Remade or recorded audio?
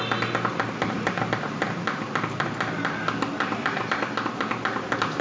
recorded